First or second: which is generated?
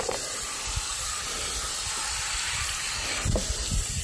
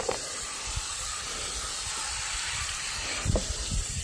second